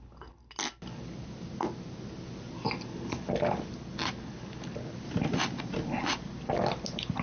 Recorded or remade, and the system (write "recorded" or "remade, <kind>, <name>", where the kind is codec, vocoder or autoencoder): recorded